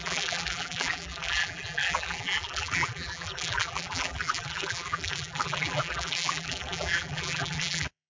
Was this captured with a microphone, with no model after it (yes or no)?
no